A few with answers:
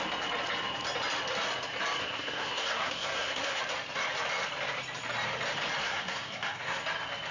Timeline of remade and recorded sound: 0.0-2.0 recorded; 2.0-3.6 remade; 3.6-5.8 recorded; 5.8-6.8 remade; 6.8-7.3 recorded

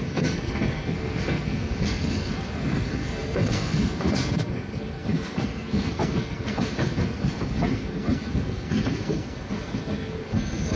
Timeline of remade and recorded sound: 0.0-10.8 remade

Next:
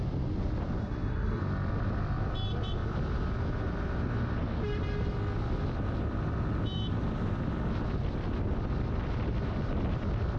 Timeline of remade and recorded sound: 0.0-0.8 recorded; 0.8-1.4 remade; 1.4-10.4 recorded

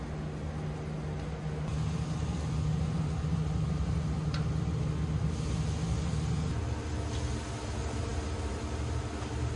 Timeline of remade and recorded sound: 0.0-9.6 recorded

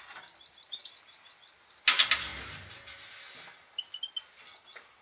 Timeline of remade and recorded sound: 0.0-5.0 recorded

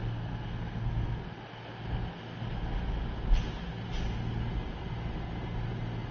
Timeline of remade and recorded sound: 0.0-1.2 remade; 1.2-6.1 recorded

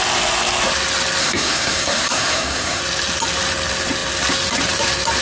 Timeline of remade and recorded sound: 0.0-1.2 recorded; 1.2-2.8 remade; 2.8-5.2 recorded